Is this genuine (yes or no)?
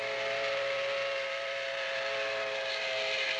yes